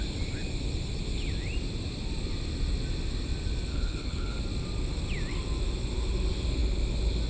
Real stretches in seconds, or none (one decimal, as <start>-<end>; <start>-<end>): 0.0-3.7; 4.4-7.3